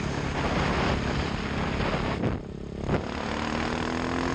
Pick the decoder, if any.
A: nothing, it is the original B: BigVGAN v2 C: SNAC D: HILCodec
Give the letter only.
A